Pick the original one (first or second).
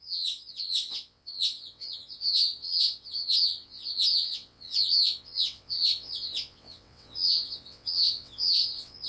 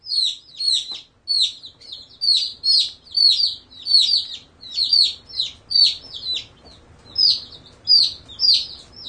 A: second